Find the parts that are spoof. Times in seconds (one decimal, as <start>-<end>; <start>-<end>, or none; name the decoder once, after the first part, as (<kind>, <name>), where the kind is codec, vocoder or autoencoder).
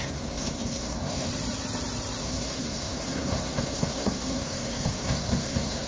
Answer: 0.0-1.3 (codec, SNAC); 2.2-5.9